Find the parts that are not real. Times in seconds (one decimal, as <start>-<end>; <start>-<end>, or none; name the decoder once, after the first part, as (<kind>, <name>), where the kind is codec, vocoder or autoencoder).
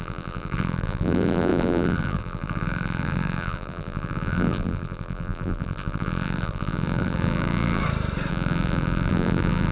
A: 0.0-7.8 (vocoder, BigVGAN v2); 8.3-9.7